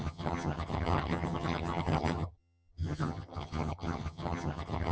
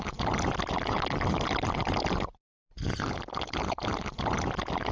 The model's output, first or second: first